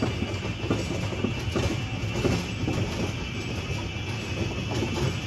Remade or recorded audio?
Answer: recorded